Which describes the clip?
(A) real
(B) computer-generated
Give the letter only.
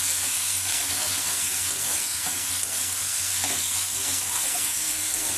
B